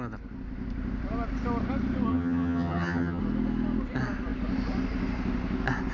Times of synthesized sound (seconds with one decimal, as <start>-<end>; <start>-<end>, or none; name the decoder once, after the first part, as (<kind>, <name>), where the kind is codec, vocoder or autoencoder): 2.1-3.2 (vocoder, HiFi-GAN)